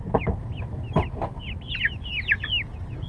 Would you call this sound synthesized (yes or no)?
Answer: no